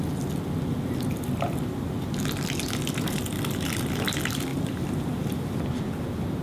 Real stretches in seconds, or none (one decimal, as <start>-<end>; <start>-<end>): 0.0-6.4